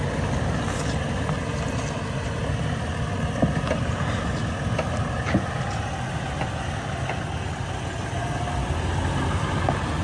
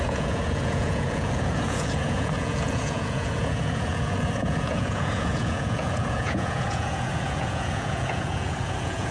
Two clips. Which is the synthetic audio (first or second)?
second